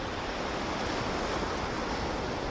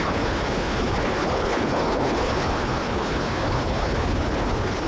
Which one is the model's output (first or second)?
second